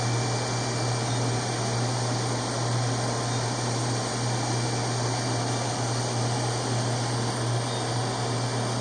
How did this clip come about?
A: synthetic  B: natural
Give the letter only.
B